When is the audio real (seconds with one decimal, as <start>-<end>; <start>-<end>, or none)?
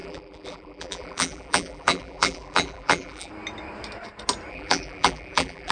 3.3-4.5